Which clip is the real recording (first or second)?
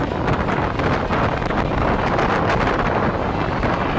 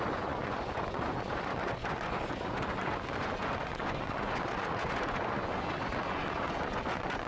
first